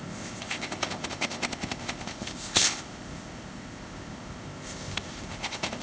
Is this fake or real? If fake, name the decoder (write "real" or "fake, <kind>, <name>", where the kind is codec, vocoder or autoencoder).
fake, codec, ZipCodec